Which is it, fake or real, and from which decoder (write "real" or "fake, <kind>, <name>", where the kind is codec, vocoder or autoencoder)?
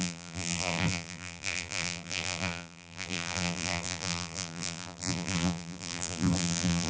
fake, vocoder, BigVGAN v2